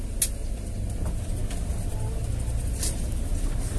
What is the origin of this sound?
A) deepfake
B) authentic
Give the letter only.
B